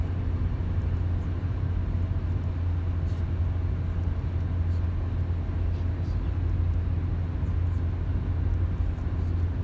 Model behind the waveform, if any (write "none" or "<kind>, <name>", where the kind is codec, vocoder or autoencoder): none